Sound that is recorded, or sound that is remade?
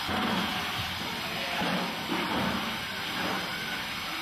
recorded